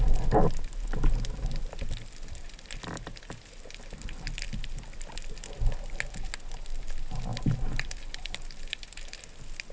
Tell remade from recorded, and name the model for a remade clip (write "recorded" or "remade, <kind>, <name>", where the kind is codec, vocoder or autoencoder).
recorded